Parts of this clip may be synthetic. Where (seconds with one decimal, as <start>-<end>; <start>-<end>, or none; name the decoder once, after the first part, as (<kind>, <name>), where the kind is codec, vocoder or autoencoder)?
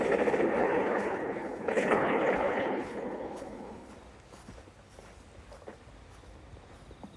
0.6-3.9 (codec, HILCodec)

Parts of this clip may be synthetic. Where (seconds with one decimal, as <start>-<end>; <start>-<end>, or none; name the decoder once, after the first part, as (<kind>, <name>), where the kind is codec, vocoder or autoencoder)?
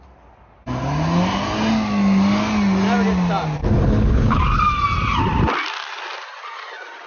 3.6-4.4 (codec, HILCodec)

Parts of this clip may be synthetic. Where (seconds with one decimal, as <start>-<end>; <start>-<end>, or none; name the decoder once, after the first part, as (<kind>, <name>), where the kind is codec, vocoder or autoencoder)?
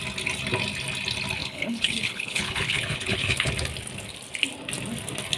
1.4-3.5 (codec, HILCodec)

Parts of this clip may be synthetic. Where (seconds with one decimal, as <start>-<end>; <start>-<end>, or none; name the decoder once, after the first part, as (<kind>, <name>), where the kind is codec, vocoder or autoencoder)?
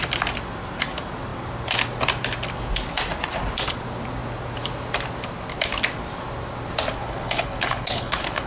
7.0-8.5 (codec, HILCodec)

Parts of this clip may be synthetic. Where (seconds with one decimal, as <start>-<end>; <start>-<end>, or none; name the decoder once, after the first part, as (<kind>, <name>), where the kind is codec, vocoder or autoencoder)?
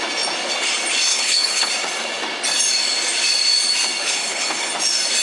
1.1-1.7 (codec, HILCodec); 4.0-4.7